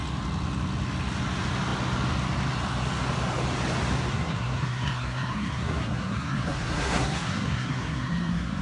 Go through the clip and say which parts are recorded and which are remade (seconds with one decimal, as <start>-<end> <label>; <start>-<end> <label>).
0.0-4.1 recorded; 4.1-8.6 remade